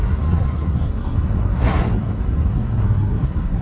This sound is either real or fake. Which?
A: fake